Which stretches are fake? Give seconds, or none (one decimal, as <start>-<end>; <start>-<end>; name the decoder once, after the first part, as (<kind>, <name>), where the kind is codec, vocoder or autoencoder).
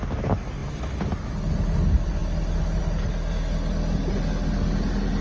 none